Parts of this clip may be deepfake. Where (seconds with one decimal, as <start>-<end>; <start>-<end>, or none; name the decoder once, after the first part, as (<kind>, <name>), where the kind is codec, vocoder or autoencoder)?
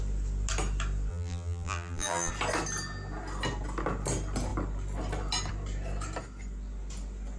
1.1-2.3 (vocoder, BigVGAN v2)